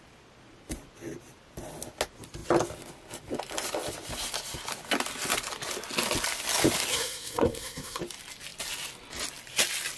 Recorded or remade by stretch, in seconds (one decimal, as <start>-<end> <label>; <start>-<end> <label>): 0.0-6.9 recorded; 6.9-8.0 remade; 8.0-10.0 recorded